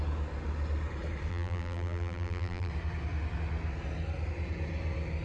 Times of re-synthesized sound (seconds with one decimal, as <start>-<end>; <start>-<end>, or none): 1.3-2.7

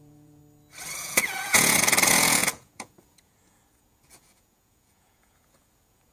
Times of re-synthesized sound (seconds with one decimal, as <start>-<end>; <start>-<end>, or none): 0.0-0.4; 1.0-6.1